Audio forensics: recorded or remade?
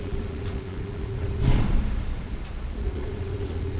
remade